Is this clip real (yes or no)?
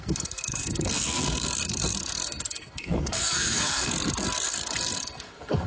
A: no